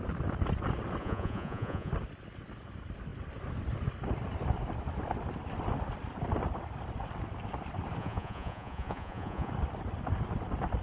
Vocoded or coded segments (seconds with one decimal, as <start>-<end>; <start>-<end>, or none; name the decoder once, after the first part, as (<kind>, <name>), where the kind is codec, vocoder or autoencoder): 1.0-1.9 (vocoder, Vocos); 8.0-9.5